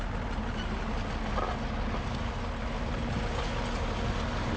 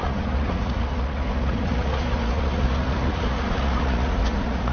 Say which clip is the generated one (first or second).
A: second